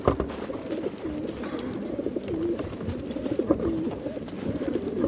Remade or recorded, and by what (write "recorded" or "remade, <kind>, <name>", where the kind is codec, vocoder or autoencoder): remade, vocoder, BigVGAN v2